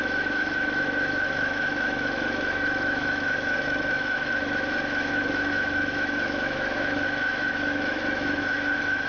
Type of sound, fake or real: fake